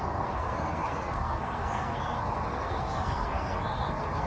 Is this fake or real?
fake